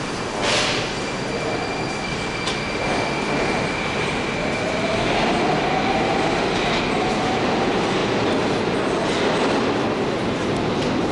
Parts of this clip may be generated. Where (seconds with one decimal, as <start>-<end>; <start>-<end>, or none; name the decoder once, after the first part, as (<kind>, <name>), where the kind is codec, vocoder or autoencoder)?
none